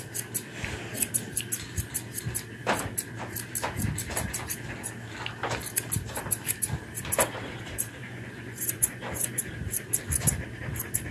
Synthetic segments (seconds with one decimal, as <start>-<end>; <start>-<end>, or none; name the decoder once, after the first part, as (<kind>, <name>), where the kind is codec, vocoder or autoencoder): 8.0-9.4 (vocoder, Vocos)

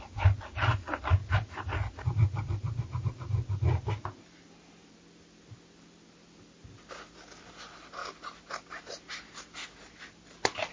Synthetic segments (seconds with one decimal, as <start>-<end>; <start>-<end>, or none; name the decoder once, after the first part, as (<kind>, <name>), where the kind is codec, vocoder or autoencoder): none